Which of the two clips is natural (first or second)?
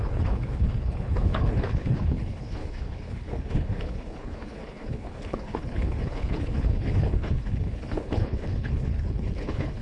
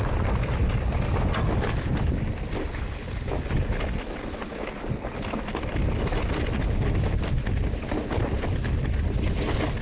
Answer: second